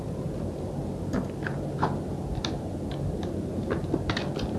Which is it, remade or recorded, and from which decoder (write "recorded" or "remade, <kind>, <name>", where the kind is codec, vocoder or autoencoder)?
recorded